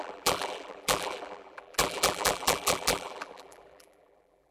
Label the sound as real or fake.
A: fake